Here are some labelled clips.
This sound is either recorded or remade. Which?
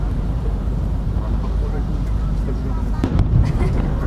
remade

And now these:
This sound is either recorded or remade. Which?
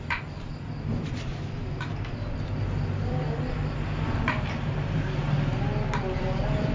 remade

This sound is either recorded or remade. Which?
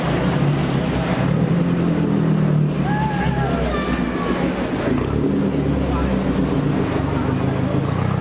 recorded